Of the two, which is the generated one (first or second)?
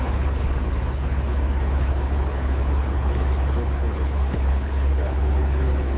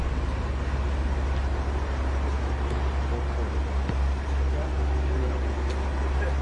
first